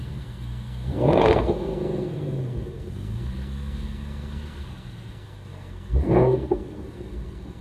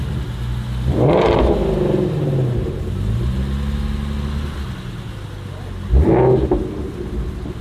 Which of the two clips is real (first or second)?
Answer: second